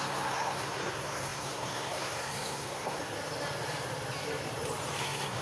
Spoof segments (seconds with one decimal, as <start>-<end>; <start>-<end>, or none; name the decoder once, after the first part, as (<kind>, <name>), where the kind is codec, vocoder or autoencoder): 0.0-3.0 (codec, SNAC); 5.0-5.4